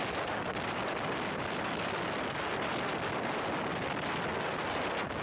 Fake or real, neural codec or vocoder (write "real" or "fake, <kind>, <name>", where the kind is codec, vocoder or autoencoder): real